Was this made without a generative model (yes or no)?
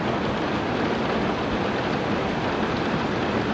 yes